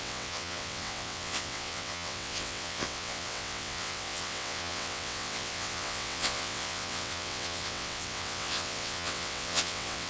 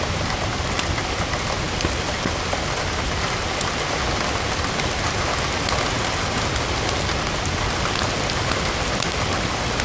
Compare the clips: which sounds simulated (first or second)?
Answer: first